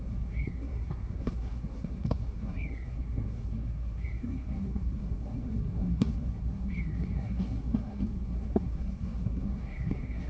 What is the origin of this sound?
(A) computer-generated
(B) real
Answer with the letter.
A